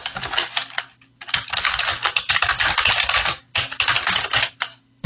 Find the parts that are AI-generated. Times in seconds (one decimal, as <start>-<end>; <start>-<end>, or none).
none